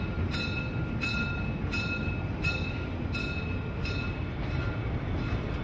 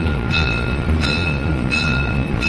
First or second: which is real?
first